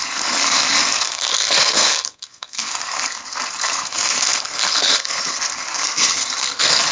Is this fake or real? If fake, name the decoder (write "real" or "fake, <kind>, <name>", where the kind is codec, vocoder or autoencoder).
fake, codec, SNAC